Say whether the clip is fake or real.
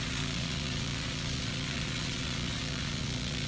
fake